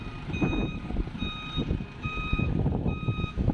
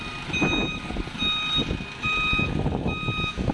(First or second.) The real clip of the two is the second